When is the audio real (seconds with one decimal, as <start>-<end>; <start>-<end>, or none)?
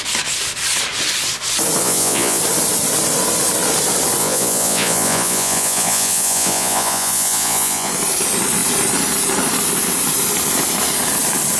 0.0-1.8; 2.4-4.2; 7.9-11.6